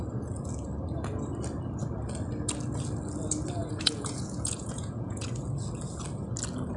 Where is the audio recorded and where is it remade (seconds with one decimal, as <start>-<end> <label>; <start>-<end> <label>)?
0.0-3.6 recorded; 3.6-5.3 remade; 5.3-6.8 recorded